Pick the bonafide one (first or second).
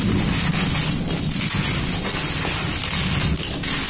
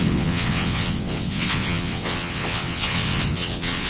first